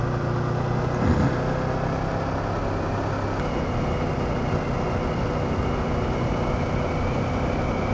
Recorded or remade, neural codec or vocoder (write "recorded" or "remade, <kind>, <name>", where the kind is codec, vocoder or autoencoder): recorded